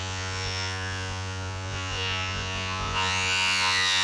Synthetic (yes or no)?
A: yes